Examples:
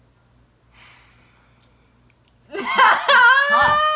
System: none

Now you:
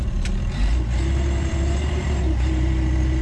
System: vocoder, BigVGAN v2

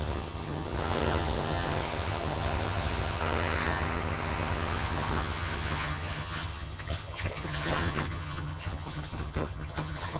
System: vocoder, HiFi-GAN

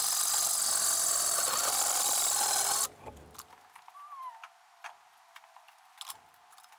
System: none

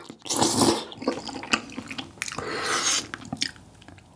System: none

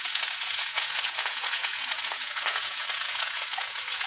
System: vocoder, Vocos